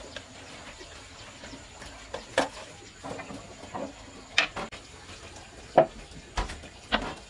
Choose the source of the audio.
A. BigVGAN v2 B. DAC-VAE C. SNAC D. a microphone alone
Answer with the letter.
D